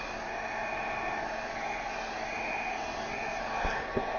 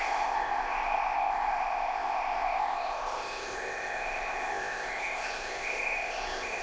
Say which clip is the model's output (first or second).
second